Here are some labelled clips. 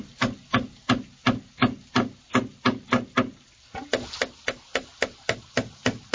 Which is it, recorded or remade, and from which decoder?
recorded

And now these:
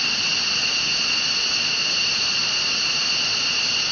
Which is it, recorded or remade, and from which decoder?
recorded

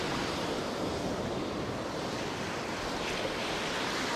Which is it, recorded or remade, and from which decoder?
remade, vocoder, BigVGAN v2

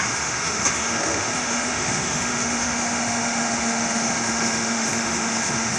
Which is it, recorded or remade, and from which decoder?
remade, autoencoder, DAC-VAE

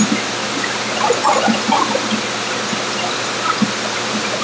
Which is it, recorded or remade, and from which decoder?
recorded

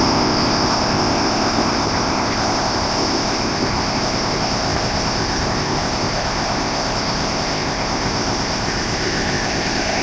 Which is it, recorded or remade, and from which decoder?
remade, codec, ZipCodec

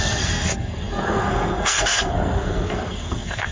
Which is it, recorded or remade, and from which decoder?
remade, codec, SNAC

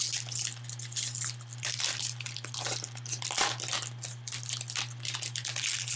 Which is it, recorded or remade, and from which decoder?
recorded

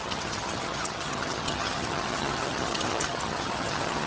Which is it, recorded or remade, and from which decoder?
remade, vocoder, HiFi-GAN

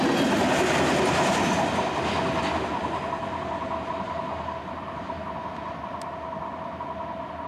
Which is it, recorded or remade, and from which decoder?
recorded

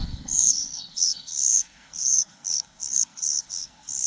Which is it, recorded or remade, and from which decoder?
remade, codec, SNAC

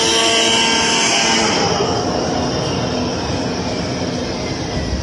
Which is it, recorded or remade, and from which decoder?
recorded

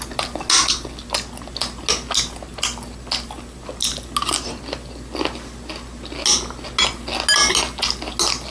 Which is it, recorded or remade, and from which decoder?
recorded